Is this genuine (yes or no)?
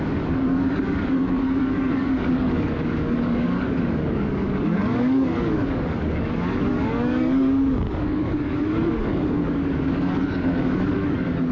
no